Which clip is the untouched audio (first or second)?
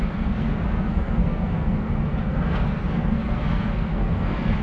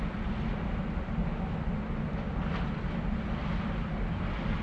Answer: second